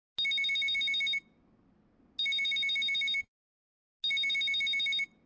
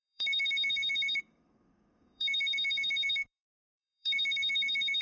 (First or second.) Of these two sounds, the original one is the first